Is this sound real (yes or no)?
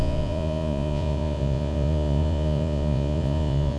no